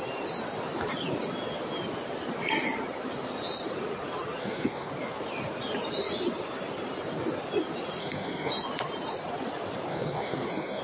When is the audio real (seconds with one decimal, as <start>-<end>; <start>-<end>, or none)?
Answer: 0.0-4.4; 4.9-8.0; 8.5-9.9